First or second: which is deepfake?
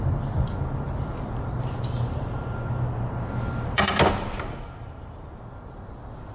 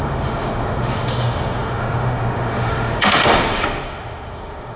second